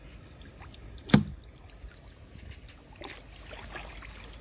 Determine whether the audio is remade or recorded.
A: recorded